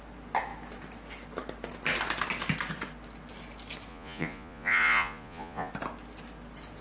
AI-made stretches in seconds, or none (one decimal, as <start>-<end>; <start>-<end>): 3.9-5.7